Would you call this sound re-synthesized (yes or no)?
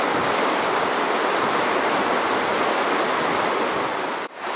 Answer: no